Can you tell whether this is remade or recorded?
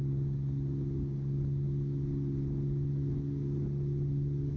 recorded